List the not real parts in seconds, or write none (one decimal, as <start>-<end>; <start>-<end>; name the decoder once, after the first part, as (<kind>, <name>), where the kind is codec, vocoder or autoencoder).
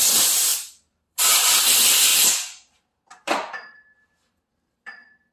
0.5-1.6 (vocoder, BigVGAN v2)